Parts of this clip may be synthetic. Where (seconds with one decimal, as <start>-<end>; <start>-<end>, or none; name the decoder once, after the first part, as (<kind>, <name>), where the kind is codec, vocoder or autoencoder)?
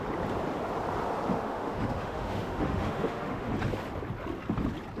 1.3-3.5 (autoencoder, DAC-VAE)